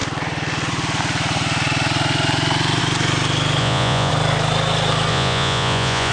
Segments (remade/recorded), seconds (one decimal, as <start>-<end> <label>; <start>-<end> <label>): 0.0-3.6 recorded; 3.6-4.1 remade; 4.1-5.1 recorded; 5.1-6.1 remade